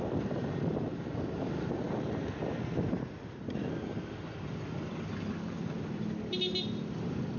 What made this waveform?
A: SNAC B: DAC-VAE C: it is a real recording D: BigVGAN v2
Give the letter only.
C